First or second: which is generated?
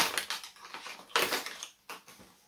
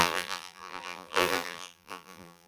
second